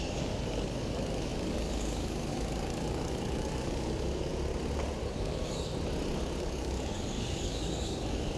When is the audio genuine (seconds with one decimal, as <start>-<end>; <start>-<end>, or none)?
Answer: 4.3-5.1; 5.7-6.4